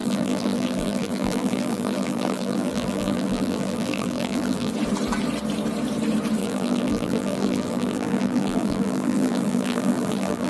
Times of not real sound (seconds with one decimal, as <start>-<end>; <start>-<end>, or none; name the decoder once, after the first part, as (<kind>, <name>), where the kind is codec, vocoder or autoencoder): 0.0-4.7 (vocoder, BigVGAN v2); 6.4-10.5